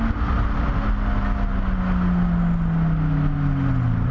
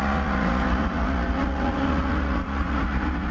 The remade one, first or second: second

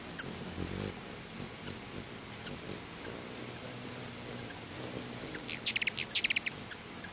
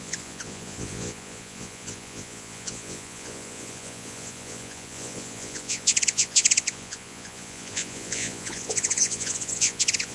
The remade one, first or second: second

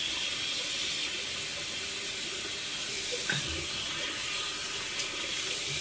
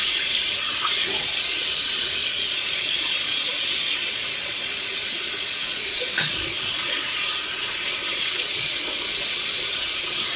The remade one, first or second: second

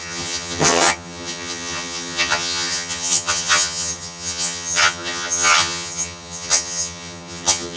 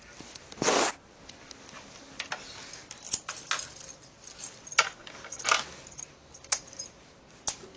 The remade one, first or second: first